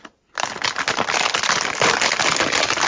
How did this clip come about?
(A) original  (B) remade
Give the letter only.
A